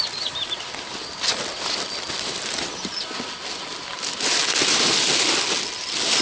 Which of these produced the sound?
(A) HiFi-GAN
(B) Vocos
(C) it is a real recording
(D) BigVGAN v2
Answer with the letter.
C